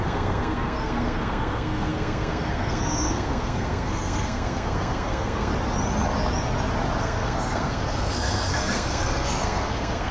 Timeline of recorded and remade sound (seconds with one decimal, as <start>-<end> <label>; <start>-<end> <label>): 0.0-5.5 remade; 5.5-7.0 recorded; 7.0-10.1 remade